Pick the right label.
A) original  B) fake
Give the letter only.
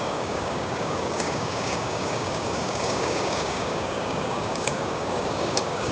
B